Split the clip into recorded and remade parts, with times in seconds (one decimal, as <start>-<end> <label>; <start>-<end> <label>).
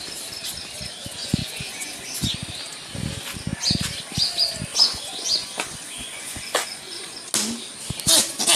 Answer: 0.0-1.2 recorded; 1.2-2.3 remade; 2.3-4.7 recorded; 4.7-7.2 remade; 7.2-8.6 recorded